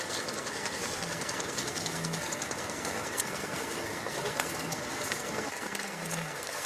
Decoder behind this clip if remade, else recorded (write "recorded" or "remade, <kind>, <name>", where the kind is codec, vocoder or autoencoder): remade, codec, SNAC